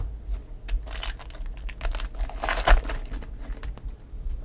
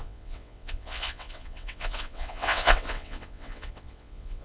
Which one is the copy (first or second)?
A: second